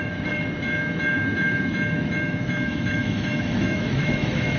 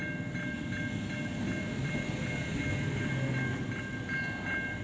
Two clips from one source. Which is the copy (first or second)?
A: first